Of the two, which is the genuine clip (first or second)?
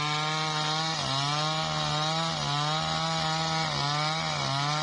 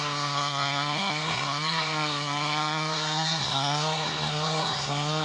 first